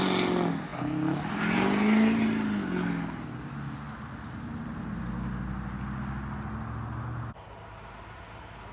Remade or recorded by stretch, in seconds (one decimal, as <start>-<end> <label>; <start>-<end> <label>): 0.0-8.7 recorded